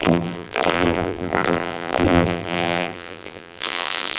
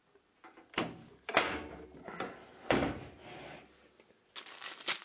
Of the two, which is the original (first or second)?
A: second